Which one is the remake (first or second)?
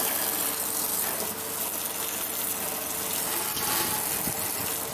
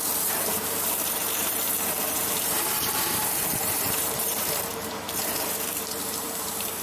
second